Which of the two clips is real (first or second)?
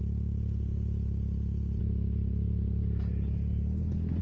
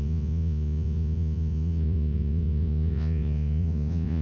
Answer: first